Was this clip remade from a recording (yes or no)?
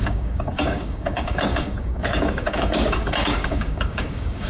yes